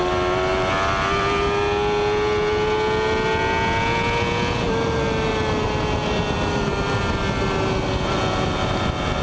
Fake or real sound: real